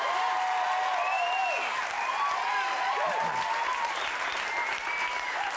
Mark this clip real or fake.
real